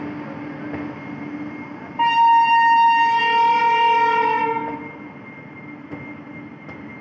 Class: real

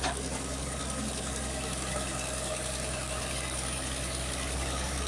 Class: fake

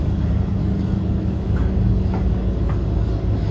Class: fake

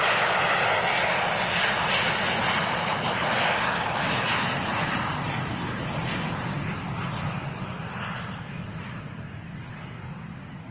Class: real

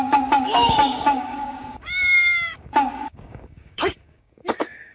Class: fake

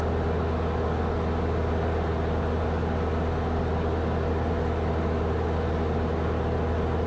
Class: real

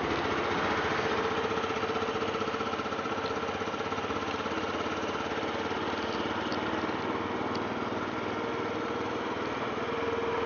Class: real